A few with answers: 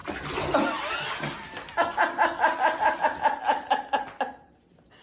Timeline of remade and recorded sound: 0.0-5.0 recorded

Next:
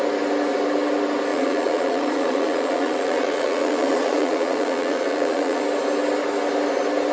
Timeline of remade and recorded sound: 0.0-1.3 recorded; 1.3-5.6 remade; 5.6-7.1 recorded

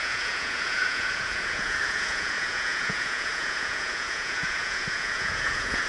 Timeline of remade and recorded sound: 0.0-5.9 remade

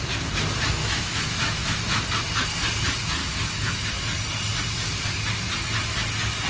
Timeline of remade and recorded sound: 0.0-0.8 recorded; 0.8-2.1 remade; 2.1-3.2 recorded; 3.2-3.9 remade; 3.9-6.5 recorded

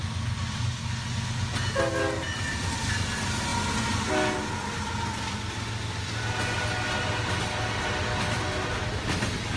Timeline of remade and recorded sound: 0.0-9.6 recorded

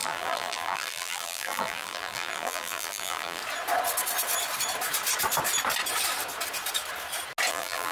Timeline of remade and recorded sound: 0.0-3.4 remade; 3.4-7.5 recorded; 7.5-7.9 remade

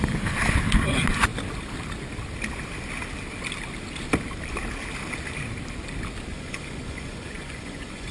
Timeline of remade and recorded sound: 0.0-6.3 recorded; 6.3-8.1 remade

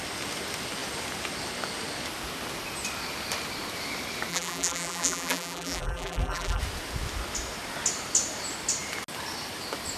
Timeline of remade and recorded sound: 0.0-4.3 recorded; 4.3-6.6 remade; 6.6-10.0 recorded